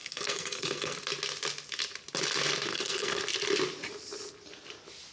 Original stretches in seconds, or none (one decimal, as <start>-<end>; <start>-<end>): 1.0-2.7; 3.2-5.1